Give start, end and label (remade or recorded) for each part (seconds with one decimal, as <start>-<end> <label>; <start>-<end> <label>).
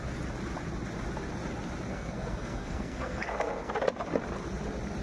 0.0-1.9 recorded; 1.9-3.7 remade; 3.7-5.0 recorded